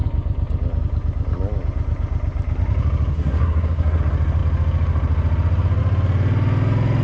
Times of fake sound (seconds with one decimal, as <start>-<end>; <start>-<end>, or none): 3.1-4.0